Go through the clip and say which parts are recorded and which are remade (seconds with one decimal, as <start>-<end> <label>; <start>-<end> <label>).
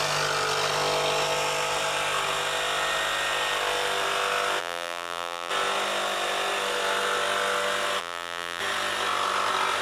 0.0-4.6 recorded; 4.6-5.5 remade; 5.5-8.0 recorded; 8.0-8.6 remade; 8.6-9.8 recorded